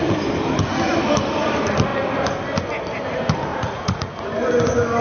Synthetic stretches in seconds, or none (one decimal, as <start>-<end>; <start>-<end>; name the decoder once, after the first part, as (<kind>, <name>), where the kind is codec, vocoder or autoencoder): 3.5-4.2 (vocoder, Vocos)

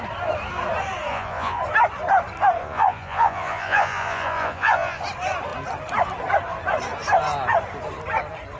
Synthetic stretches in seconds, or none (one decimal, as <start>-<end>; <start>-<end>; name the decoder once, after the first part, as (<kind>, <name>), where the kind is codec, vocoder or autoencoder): 1.1-1.6 (vocoder, Vocos); 2.6-5.0

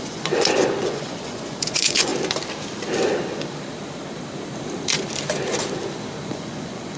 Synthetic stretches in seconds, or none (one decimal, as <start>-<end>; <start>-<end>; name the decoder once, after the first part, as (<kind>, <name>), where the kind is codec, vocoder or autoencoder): 0.0-2.1 (vocoder, Vocos); 6.3-7.0